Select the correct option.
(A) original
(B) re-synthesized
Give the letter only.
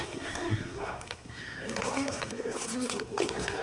B